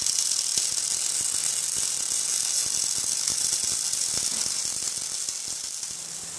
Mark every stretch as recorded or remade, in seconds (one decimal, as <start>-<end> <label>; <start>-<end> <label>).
0.0-6.4 recorded